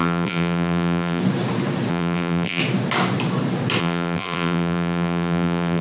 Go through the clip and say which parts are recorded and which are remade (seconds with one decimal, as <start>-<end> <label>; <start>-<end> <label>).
0.0-1.2 remade; 1.2-1.9 recorded; 1.9-2.6 remade; 2.6-3.8 recorded; 3.8-5.8 remade